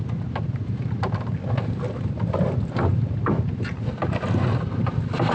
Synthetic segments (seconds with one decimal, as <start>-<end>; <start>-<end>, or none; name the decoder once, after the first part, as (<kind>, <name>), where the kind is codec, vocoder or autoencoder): none